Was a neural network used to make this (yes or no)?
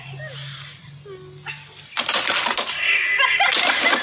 no